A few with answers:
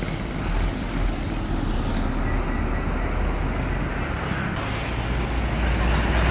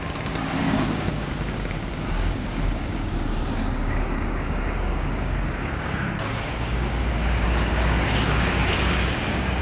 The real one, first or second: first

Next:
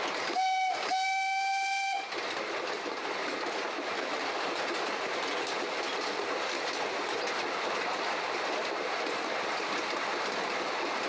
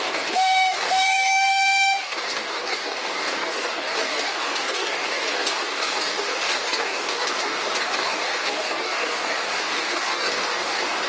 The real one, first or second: first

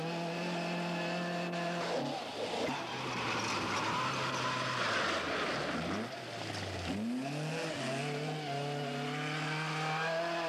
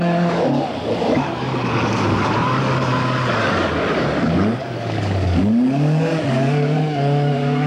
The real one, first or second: first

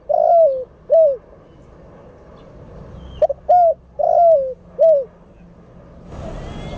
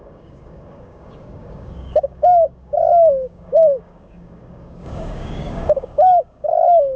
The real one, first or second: first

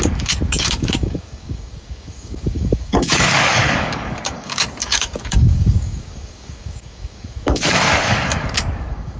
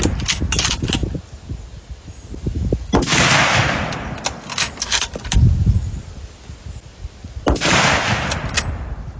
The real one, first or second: second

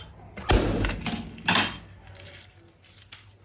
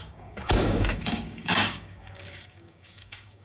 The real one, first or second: first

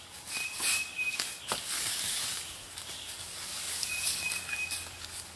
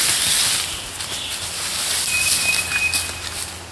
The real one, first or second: second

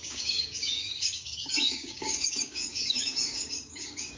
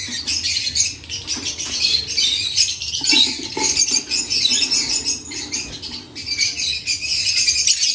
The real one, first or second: second